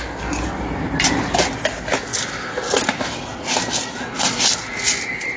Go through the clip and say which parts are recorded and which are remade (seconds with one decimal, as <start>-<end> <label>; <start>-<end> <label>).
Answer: 0.0-2.1 recorded; 2.1-3.0 remade; 3.0-5.4 recorded